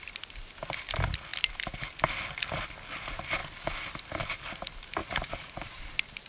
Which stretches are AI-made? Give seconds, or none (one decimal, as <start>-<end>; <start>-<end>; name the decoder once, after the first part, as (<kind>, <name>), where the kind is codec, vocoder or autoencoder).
5.0-5.8 (vocoder, Vocos)